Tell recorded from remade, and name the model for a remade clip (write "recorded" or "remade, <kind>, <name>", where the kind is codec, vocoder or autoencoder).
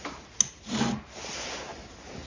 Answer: recorded